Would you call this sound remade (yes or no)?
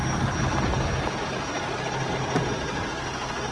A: no